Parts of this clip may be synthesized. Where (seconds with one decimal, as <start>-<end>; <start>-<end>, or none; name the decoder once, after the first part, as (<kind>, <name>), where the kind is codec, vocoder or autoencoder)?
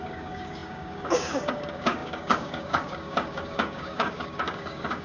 0.0-5.0 (codec, DAC)